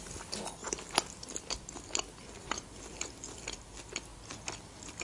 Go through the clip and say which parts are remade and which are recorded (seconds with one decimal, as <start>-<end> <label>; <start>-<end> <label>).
0.0-5.0 recorded